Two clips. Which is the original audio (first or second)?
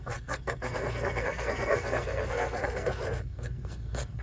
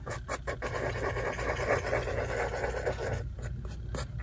second